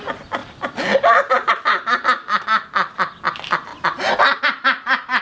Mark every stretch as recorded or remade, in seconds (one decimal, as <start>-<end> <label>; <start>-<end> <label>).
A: 0.0-5.2 recorded